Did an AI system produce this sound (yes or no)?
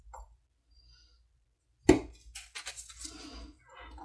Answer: no